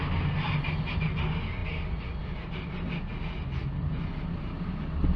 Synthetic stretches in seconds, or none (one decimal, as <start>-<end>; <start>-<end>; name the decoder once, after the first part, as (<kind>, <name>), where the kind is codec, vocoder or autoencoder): none